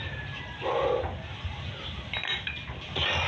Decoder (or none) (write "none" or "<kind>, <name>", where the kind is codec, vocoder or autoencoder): none